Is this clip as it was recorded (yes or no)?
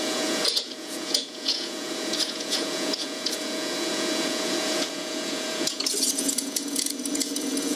no